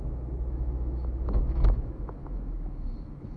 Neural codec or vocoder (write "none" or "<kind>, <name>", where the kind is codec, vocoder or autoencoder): autoencoder, DAC-VAE